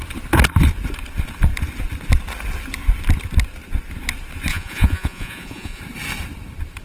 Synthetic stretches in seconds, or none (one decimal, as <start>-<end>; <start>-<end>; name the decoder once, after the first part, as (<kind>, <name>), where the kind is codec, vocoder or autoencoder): 4.5-5.8 (vocoder, Vocos)